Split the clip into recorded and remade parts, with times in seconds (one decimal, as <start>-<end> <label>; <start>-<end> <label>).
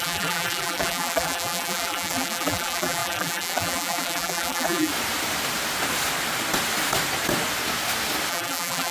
0.0-4.9 remade; 4.9-8.3 recorded; 8.3-8.9 remade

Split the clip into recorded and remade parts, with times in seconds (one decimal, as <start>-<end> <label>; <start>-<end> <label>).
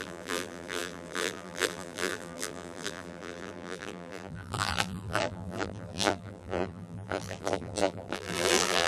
0.0-8.9 remade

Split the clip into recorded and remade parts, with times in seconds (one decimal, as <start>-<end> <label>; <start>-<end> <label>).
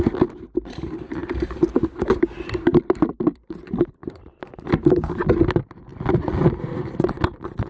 0.0-1.2 remade; 1.2-2.8 recorded; 2.8-4.0 remade; 4.0-5.4 recorded; 5.4-5.9 remade; 5.9-6.6 recorded; 6.6-7.7 remade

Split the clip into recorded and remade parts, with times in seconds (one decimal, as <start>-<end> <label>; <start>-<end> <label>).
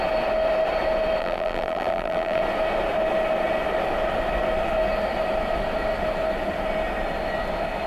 0.0-1.2 recorded; 1.2-2.4 remade; 2.4-7.9 recorded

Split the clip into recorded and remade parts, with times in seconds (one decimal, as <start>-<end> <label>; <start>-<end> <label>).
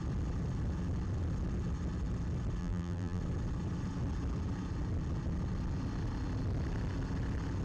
0.0-2.6 recorded; 2.6-3.2 remade; 3.2-7.6 recorded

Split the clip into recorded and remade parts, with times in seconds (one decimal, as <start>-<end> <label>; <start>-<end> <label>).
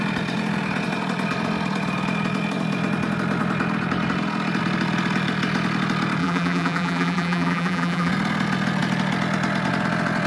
0.0-6.2 recorded; 6.2-8.1 remade; 8.1-10.3 recorded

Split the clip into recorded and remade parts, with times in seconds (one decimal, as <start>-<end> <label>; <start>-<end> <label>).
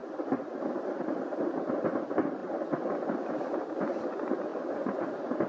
0.0-1.7 remade; 1.7-2.4 recorded; 2.4-3.3 remade; 3.3-5.5 recorded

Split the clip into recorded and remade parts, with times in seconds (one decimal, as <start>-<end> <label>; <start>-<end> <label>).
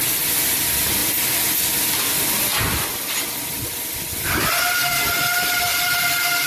0.0-5.7 recorded; 5.7-6.5 remade